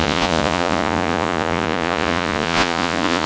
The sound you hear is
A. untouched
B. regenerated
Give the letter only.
B